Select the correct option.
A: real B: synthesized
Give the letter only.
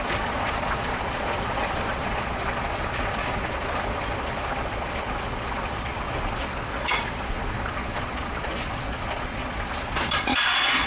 B